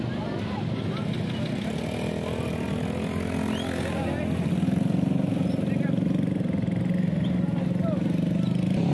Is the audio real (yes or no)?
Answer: yes